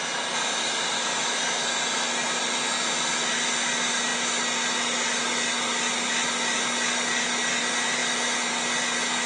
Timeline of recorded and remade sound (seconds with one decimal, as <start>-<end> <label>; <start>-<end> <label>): 0.0-9.3 recorded